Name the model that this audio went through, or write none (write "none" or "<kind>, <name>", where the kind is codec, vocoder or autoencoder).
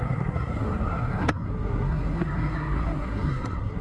codec, SNAC